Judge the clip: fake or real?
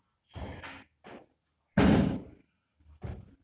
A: real